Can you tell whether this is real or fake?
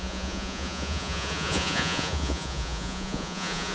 fake